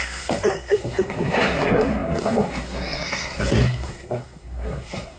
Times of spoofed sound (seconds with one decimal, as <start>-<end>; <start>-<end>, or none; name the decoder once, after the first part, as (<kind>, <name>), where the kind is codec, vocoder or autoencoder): 0.0-5.2 (codec, SNAC)